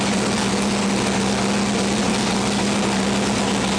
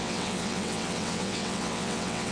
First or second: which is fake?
second